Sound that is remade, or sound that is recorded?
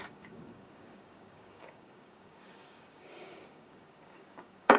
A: remade